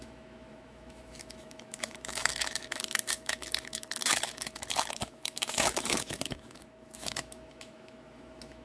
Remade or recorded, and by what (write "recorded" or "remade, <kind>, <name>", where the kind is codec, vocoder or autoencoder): remade, autoencoder, DAC-VAE